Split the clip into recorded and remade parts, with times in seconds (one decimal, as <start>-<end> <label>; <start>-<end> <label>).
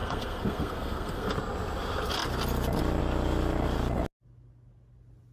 0.0-1.3 remade; 1.3-5.3 recorded